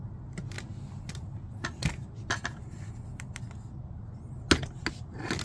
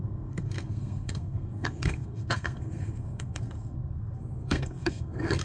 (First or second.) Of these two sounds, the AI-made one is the second